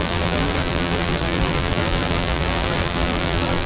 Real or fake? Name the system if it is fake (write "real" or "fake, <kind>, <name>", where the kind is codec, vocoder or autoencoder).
fake, vocoder, BigVGAN v2